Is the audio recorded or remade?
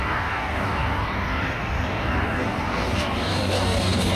remade